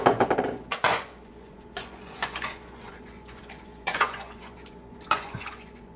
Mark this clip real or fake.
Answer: fake